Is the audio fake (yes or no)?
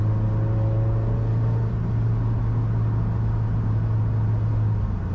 no